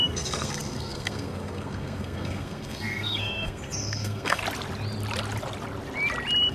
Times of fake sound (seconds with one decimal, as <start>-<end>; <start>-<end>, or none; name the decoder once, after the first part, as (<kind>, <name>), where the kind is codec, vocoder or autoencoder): 0.0-4.4 (codec, SNAC)